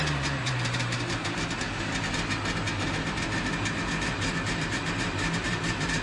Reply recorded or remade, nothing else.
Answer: remade